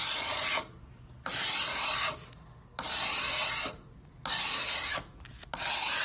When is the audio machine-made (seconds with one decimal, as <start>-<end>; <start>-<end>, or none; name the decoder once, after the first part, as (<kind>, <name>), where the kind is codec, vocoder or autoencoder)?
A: none